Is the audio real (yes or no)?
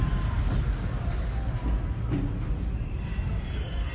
yes